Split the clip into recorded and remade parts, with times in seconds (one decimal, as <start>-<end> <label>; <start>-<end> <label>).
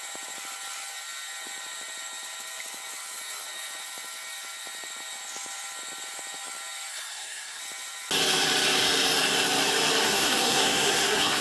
0.0-6.9 recorded; 6.9-7.6 remade; 7.6-10.0 recorded; 10.0-11.4 remade